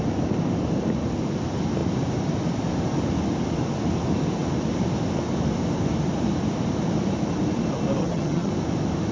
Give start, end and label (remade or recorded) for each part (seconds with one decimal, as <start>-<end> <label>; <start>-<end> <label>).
0.0-8.0 recorded; 8.0-8.5 remade; 8.5-9.1 recorded